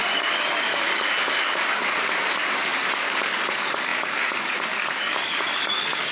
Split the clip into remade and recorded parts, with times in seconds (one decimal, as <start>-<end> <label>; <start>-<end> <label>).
0.0-6.1 remade